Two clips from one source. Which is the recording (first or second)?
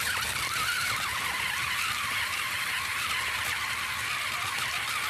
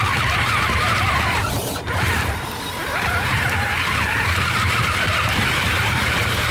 first